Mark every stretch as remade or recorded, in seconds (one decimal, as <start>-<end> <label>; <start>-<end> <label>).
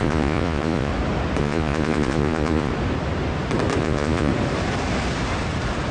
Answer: 0.0-0.9 remade; 0.9-1.4 recorded; 1.4-2.7 remade; 2.7-3.8 recorded; 3.8-4.3 remade; 4.3-5.9 recorded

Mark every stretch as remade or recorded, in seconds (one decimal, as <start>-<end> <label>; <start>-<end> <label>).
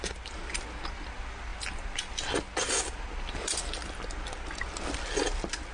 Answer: 0.0-5.7 recorded